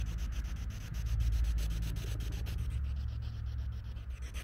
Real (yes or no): yes